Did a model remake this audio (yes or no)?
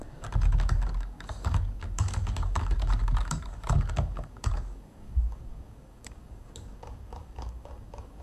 yes